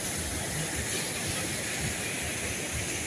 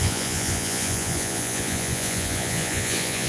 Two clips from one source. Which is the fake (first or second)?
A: second